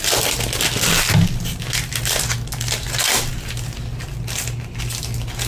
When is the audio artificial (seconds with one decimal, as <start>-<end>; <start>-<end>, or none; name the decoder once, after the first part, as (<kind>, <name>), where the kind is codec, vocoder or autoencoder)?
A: none